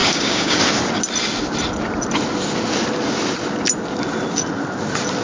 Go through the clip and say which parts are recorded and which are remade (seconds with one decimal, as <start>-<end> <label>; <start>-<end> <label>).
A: 0.0-0.6 remade; 0.6-5.2 recorded